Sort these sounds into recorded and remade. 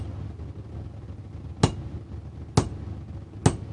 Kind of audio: recorded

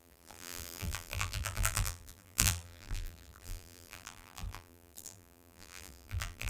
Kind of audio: remade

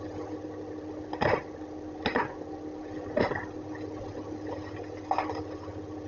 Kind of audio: recorded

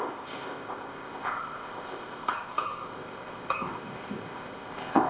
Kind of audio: remade